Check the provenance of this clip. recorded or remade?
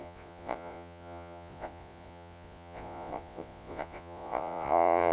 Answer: remade